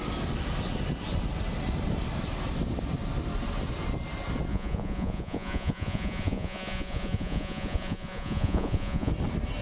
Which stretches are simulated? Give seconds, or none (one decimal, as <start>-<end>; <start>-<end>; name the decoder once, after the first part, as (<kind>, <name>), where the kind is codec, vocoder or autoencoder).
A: 4.5-9.1 (vocoder, Vocos)